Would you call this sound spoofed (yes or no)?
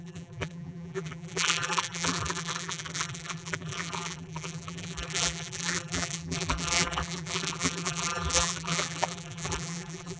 yes